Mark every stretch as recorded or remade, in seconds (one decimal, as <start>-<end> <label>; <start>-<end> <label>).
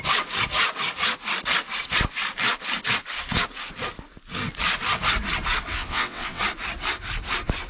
0.0-5.7 recorded; 5.7-6.4 remade; 6.4-7.7 recorded